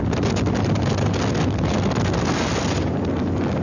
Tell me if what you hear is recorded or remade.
recorded